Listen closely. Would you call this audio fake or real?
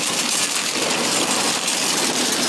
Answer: real